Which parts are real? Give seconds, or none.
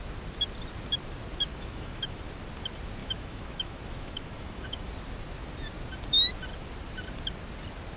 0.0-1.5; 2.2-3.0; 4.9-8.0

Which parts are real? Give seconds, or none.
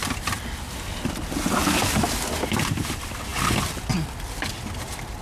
1.6-5.2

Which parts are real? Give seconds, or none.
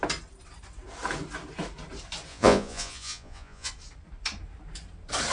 0.0-2.3; 3.7-5.3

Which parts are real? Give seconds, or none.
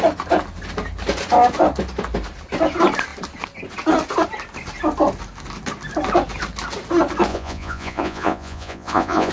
0.0-7.3